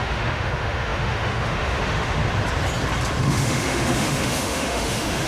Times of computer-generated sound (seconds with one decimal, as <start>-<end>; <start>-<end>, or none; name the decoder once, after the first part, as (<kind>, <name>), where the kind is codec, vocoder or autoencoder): 0.0-2.2 (autoencoder, DAC-VAE); 3.2-5.3

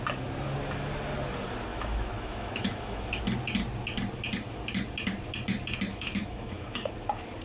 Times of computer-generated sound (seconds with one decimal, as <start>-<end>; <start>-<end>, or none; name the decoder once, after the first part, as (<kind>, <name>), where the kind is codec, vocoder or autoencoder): 1.7-3.2 (autoencoder, DAC-VAE); 5.9-6.9

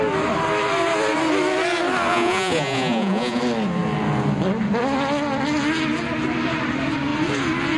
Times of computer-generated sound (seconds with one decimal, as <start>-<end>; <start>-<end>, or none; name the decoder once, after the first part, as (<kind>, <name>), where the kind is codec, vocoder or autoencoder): 2.1-3.4 (vocoder, Vocos)

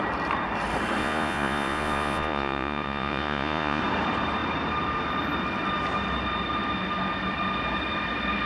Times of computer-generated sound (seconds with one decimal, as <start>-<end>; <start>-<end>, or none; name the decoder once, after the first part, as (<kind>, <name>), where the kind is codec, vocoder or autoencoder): 1.0-3.8 (vocoder, Vocos)

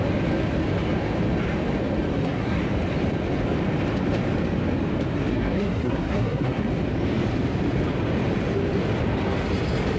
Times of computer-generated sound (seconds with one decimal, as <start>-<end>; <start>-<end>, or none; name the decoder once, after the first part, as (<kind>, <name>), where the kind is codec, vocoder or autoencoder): 2.1-2.6 (codec, SNAC); 5.3-6.7